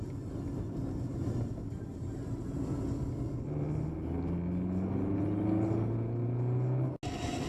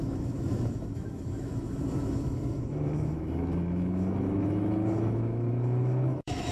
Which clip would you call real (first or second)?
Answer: first